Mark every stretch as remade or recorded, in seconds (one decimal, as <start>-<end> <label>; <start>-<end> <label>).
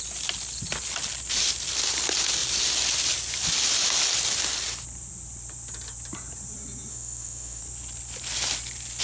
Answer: 0.0-6.9 recorded; 6.9-7.6 remade; 7.6-9.0 recorded